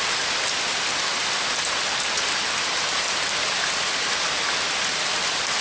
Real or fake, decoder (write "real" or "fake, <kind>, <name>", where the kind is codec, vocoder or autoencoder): real